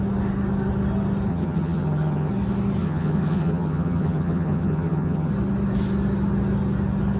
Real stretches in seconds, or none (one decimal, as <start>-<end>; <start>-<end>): 0.0-1.3; 2.3-2.8; 5.3-7.2